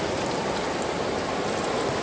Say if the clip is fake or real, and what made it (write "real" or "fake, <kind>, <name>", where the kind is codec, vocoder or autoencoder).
real